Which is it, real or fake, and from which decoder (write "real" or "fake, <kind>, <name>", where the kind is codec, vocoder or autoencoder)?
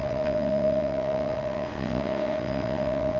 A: fake, vocoder, WaveNeXt